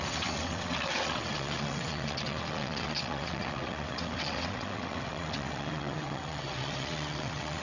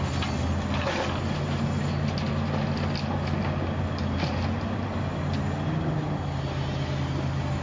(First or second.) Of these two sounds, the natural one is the second